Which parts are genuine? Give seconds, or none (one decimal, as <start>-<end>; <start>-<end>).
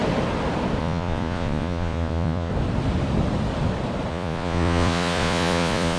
0.0-0.8; 2.5-4.1